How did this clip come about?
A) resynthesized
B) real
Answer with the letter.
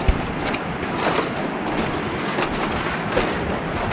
B